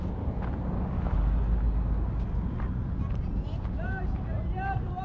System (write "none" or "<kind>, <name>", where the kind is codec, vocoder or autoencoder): none